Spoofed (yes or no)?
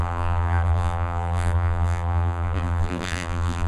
yes